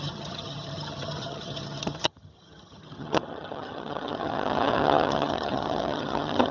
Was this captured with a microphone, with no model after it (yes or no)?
no